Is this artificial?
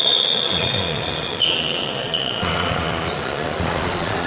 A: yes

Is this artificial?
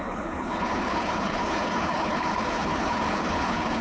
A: yes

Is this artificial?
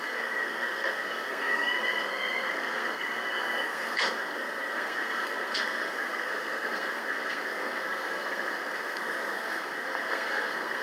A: yes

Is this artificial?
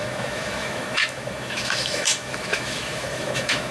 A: yes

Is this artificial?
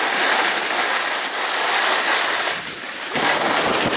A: no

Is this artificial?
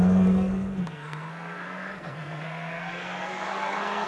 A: yes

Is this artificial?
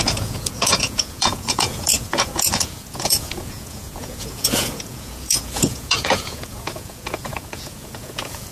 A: yes